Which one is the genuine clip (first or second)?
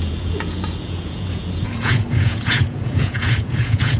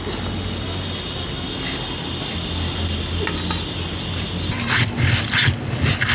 second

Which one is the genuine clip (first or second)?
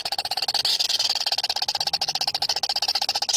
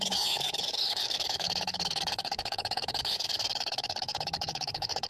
first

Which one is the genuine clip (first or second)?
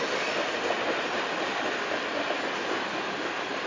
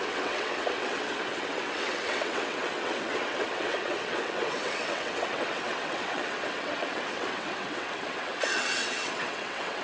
first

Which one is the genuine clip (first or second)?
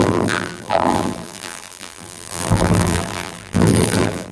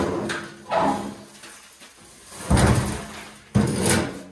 second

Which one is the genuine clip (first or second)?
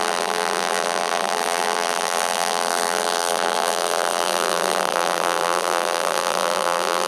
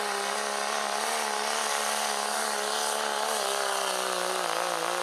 second